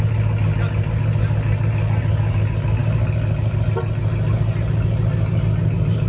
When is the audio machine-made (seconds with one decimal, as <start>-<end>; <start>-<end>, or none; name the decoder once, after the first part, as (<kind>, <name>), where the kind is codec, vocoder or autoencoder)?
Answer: none

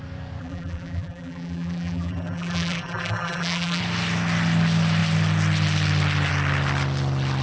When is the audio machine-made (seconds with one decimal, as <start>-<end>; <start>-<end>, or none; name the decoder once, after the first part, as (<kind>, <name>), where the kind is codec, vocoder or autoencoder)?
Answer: 0.4-3.8 (vocoder, BigVGAN v2)